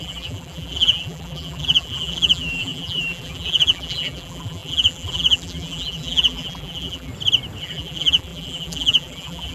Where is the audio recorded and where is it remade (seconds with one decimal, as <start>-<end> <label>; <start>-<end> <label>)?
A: 0.0-7.1 remade; 7.1-7.6 recorded; 7.6-9.5 remade